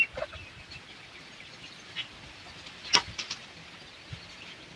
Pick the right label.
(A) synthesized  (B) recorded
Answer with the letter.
B